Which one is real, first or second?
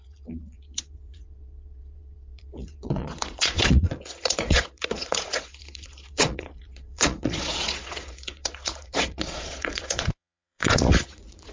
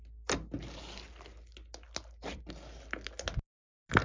second